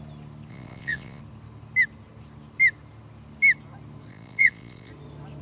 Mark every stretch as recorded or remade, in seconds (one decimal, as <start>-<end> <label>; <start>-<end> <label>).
0.0-0.5 recorded; 0.5-1.2 remade; 1.2-4.1 recorded; 4.1-4.9 remade; 4.9-5.4 recorded